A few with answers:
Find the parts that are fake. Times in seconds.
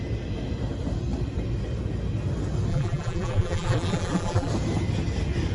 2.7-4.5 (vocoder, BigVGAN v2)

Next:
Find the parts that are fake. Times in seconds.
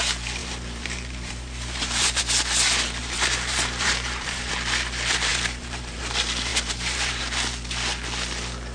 0.4-2.2 (vocoder, BigVGAN v2); 3.0-4.5; 5.3-6.0; 6.5-7.2